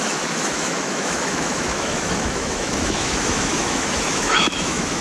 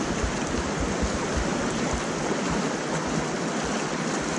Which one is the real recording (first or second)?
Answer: second